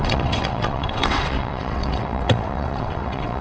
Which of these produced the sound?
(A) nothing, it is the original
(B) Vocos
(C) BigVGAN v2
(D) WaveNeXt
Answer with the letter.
D